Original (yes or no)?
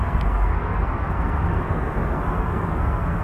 no